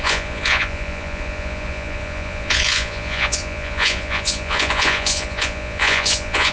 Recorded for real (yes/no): no